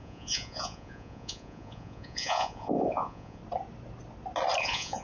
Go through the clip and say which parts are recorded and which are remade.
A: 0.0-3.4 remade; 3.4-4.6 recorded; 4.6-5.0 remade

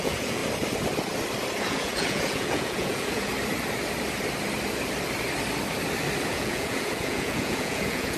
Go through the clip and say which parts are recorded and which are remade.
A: 0.0-0.4 remade; 0.4-1.6 recorded; 1.6-3.3 remade; 3.3-6.3 recorded; 6.3-8.2 remade